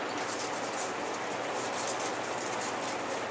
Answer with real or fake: real